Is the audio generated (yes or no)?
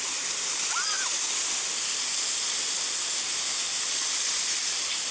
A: no